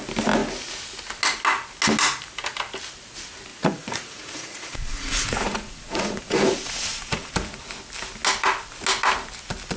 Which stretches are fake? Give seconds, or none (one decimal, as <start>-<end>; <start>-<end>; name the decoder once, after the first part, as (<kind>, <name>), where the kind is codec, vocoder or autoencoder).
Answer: 3.5-7.3 (vocoder, Vocos)